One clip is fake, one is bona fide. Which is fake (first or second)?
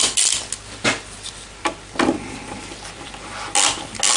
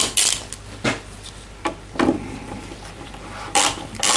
second